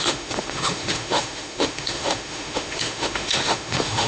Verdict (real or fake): fake